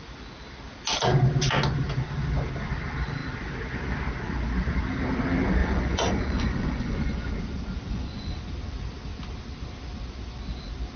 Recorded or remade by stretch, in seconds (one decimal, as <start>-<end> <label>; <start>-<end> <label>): 0.0-5.6 recorded; 5.6-7.3 remade; 7.3-7.9 recorded; 7.9-8.4 remade; 8.4-11.0 recorded